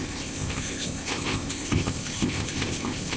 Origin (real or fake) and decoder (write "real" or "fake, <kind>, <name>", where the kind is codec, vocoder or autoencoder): fake, codec, ZipCodec